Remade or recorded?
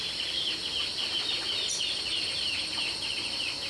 recorded